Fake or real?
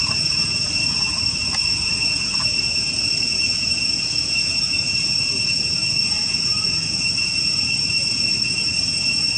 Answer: fake